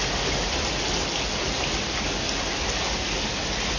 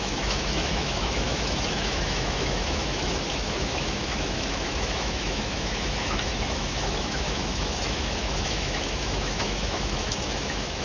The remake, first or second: second